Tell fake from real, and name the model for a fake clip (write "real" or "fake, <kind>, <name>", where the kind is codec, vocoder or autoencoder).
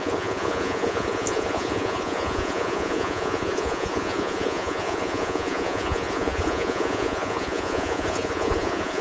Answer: fake, vocoder, Vocos